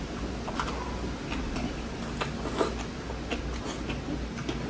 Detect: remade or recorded recorded